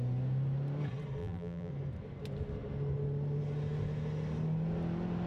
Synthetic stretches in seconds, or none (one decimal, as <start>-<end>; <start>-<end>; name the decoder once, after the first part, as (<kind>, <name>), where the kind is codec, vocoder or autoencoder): 1.2-1.7 (vocoder, BigVGAN v2)